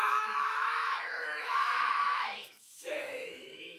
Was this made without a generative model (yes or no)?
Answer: no